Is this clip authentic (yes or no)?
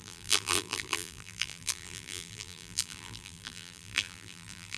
no